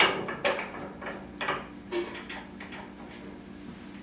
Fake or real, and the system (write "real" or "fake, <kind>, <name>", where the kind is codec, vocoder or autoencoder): real